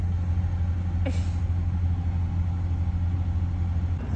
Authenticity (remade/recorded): recorded